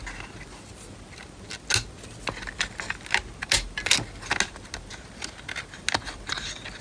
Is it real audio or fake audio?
real